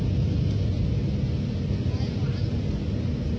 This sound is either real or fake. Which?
real